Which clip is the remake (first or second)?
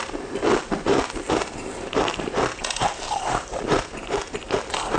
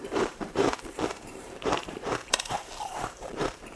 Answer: second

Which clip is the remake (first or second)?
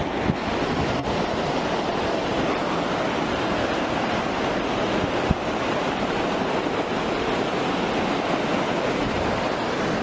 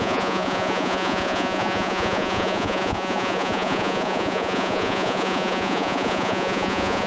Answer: second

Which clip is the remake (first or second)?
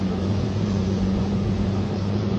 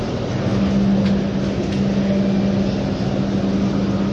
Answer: first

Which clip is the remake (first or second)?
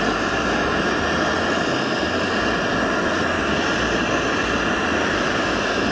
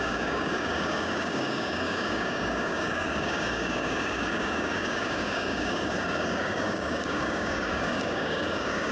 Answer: second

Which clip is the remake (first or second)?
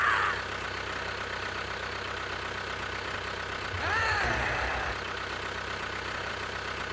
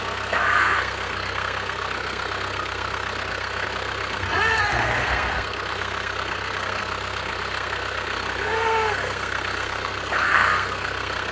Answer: second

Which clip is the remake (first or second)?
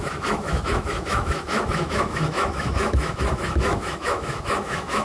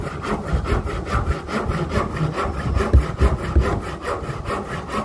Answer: first